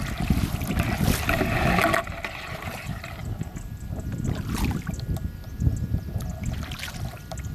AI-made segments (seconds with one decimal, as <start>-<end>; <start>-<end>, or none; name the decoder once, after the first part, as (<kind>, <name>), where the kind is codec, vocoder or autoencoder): none